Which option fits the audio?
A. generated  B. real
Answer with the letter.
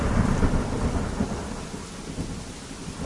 B